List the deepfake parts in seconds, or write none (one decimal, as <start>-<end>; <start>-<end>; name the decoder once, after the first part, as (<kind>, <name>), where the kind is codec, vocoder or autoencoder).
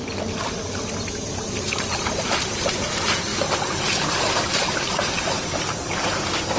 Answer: 0.7-3.3 (vocoder, BigVGAN v2); 4.3-6.6